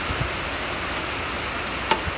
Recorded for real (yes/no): yes